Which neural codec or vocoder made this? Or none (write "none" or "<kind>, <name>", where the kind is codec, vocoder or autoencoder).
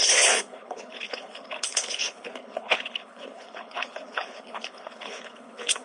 codec, HILCodec